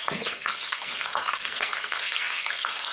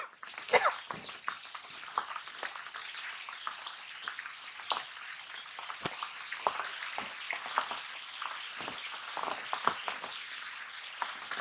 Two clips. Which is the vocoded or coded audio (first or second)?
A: first